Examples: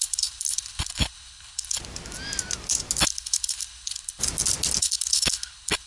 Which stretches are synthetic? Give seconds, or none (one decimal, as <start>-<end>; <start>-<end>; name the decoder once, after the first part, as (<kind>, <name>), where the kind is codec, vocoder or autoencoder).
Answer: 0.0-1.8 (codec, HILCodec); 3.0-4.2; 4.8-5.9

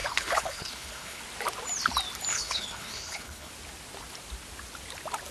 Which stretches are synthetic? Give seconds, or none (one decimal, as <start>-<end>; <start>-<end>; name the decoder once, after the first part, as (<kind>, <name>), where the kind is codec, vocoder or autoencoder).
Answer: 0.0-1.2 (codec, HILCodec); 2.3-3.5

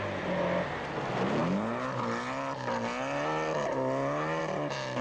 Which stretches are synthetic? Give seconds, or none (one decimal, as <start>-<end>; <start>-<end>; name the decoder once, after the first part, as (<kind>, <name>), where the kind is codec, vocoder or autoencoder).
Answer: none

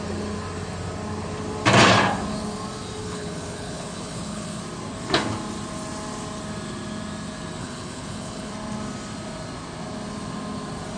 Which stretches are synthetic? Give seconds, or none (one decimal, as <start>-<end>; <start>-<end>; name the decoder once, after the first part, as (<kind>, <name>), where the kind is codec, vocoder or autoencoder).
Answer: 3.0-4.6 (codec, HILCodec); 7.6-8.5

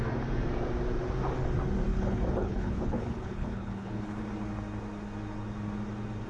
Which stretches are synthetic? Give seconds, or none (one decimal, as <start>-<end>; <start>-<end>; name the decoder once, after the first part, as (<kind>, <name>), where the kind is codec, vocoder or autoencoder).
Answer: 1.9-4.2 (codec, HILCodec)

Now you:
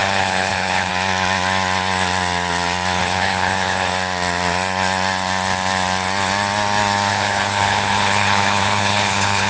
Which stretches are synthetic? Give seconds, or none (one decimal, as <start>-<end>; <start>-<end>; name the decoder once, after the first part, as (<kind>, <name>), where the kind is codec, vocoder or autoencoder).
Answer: 0.0-0.9 (codec, HILCodec); 3.0-3.9; 7.1-9.5

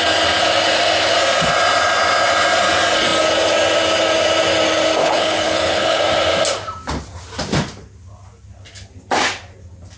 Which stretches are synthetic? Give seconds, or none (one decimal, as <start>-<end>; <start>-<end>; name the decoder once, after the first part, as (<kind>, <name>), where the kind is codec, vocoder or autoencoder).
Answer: 5.0-6.0 (codec, HILCodec)